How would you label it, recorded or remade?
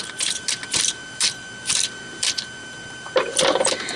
recorded